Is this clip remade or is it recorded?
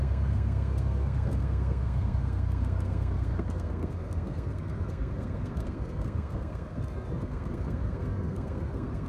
remade